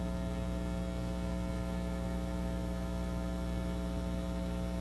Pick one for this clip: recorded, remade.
remade